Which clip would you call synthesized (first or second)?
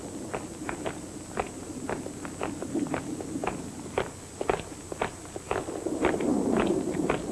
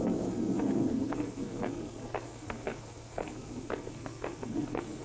second